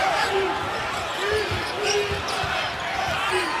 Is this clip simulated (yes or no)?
no